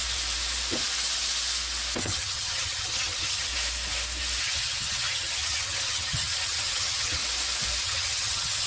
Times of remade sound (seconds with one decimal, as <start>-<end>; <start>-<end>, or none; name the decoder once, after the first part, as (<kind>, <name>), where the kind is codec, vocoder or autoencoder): 2.0-3.5 (vocoder, HiFi-GAN); 4.4-7.2; 7.8-8.7